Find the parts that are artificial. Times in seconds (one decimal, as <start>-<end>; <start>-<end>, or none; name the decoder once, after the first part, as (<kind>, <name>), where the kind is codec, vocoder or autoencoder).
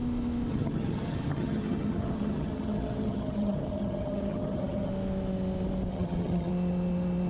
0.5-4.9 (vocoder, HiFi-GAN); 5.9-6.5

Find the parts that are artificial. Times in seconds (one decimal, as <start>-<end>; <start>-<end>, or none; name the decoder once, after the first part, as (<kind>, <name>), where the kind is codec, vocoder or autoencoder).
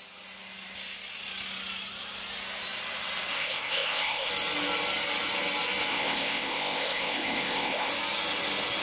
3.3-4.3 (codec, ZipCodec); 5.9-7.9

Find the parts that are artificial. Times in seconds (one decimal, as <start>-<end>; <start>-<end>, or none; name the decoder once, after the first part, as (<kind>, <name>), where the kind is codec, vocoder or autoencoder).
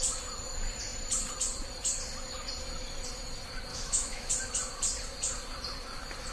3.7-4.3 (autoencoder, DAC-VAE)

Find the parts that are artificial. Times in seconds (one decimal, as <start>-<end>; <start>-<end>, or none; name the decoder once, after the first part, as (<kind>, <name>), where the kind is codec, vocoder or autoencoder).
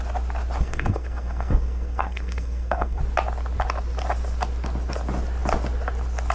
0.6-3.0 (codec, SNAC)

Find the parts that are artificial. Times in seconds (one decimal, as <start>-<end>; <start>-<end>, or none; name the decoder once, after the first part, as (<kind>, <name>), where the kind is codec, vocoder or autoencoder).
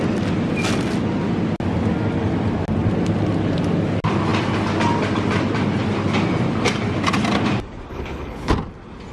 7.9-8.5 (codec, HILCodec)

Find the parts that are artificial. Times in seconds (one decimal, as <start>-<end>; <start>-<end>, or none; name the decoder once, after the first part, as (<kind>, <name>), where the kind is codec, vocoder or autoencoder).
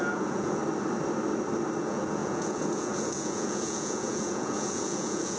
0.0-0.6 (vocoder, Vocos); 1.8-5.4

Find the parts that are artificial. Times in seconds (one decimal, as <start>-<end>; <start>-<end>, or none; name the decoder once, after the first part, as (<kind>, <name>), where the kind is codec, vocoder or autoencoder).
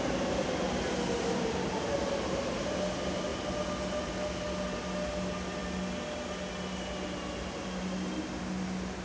none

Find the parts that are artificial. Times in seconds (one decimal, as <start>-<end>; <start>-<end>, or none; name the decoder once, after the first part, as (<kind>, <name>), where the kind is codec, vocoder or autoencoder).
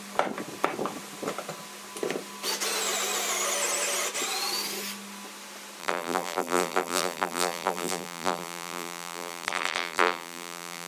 5.8-10.9 (vocoder, BigVGAN v2)